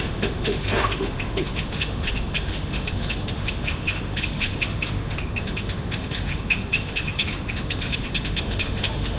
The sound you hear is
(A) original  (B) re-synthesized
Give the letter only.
B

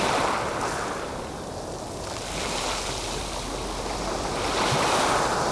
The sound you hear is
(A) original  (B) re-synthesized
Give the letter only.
A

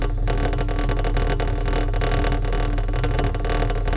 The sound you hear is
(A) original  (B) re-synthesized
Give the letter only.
A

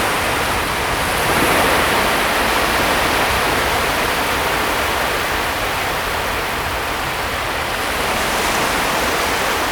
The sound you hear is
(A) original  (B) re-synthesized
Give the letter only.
A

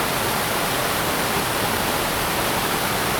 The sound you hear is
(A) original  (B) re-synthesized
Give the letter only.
B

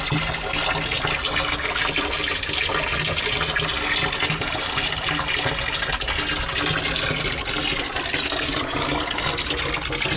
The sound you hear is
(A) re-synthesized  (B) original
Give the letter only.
B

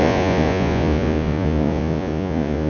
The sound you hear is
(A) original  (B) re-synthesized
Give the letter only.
B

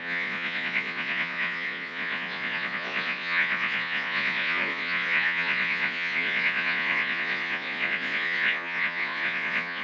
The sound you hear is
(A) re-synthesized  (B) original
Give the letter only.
A